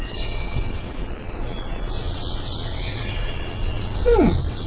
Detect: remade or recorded remade